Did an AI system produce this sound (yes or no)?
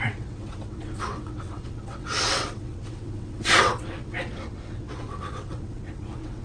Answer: yes